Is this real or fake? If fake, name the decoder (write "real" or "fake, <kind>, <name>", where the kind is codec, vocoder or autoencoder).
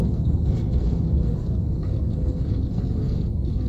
fake, codec, SNAC